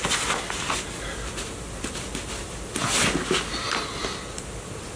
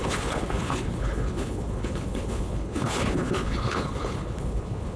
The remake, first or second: second